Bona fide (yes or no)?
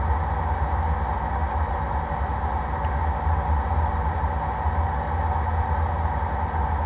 yes